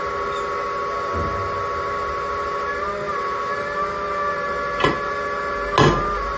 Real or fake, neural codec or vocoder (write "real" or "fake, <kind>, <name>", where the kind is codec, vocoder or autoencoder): real